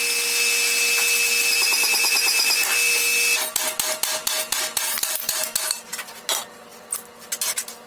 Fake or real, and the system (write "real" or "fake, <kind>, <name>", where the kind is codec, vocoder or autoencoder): real